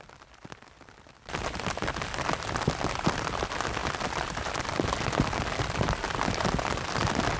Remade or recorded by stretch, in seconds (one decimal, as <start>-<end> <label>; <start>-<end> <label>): 0.0-7.4 recorded